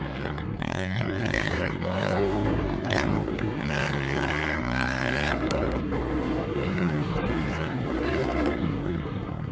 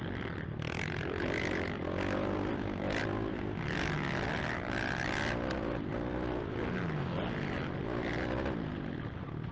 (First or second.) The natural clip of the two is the second